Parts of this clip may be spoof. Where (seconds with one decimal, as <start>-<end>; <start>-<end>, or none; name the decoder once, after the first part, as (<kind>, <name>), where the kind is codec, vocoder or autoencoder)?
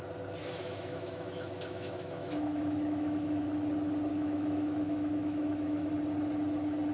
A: 0.4-3.4 (autoencoder, DAC-VAE); 4.1-5.9